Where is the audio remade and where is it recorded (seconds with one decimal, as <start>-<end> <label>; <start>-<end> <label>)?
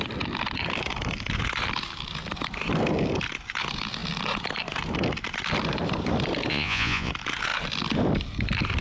0.0-6.5 recorded; 6.5-7.1 remade; 7.1-8.8 recorded